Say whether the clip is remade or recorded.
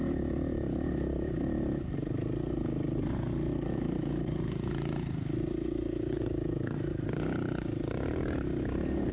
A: recorded